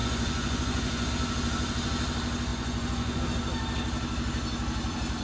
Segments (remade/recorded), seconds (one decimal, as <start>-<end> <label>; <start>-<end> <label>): 0.0-1.1 remade; 1.1-2.5 recorded; 2.5-3.2 remade; 3.2-5.2 recorded